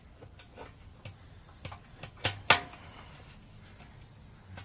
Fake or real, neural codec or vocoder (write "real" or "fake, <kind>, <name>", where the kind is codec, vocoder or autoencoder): real